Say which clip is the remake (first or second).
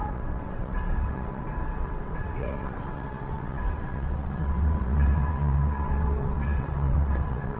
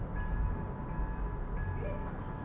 first